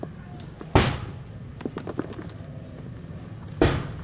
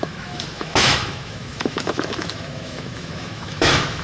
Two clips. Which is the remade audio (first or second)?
second